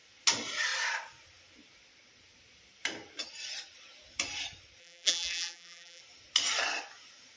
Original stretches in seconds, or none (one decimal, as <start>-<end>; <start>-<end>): 0.0-4.8; 6.0-7.4

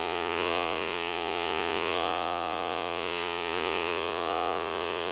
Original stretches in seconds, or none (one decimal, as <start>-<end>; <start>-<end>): none

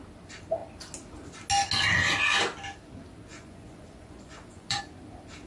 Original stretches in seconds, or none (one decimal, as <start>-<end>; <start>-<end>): 0.0-3.3; 4.8-5.5

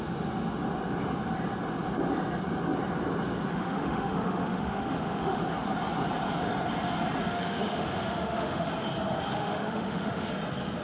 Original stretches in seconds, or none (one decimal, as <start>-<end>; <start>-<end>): 0.0-3.5; 5.4-7.3; 8.7-9.3; 10.3-10.8

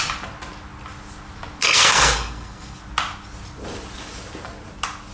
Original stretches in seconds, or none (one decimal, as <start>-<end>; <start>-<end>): 0.0-1.6; 2.8-5.1

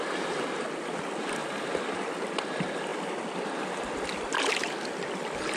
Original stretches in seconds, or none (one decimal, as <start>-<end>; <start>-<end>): 0.0-5.6

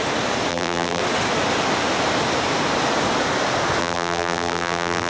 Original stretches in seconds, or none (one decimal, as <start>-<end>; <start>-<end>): 0.0-0.5; 1.0-3.8